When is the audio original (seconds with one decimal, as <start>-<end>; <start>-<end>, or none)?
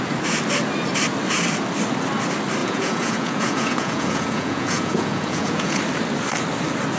0.0-2.6; 5.8-7.0